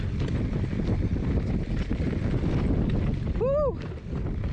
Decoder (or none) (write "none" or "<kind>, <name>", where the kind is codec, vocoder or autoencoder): none